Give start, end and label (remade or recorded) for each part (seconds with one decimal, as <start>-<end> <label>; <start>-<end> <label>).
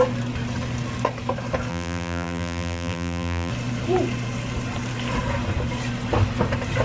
0.0-1.7 recorded; 1.7-3.5 remade; 3.5-6.8 recorded